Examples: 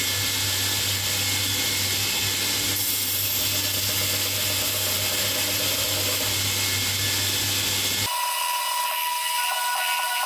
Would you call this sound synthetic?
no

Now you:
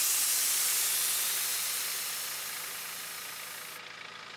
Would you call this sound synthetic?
no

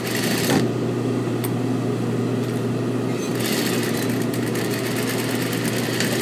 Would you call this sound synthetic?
no